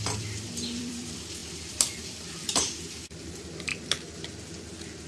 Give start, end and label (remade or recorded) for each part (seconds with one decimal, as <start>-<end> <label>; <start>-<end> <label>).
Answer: 0.0-3.7 remade; 3.7-5.1 recorded

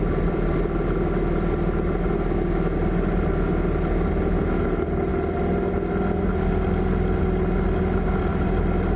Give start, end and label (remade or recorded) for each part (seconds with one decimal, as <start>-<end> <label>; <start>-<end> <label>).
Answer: 0.0-8.3 recorded; 8.3-9.0 remade

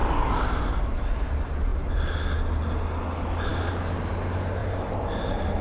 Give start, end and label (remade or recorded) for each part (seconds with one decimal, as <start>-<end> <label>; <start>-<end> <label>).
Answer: 0.0-1.1 remade; 1.1-4.6 recorded; 4.6-5.6 remade